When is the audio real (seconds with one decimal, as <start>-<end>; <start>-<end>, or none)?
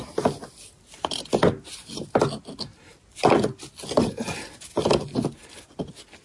0.0-6.2